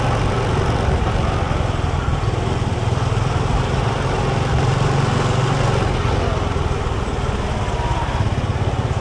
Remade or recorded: recorded